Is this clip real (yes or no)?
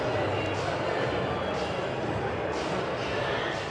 yes